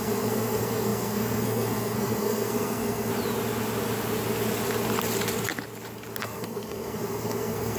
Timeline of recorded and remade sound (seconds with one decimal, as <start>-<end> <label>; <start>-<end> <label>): 0.0-3.1 remade; 3.1-6.2 recorded; 6.2-7.8 remade